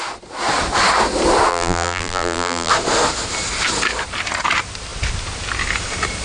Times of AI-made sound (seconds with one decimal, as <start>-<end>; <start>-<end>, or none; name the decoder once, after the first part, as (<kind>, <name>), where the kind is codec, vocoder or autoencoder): 1.5-2.7 (vocoder, BigVGAN v2)